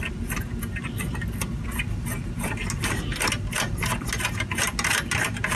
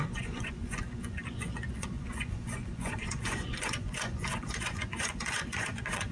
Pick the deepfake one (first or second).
second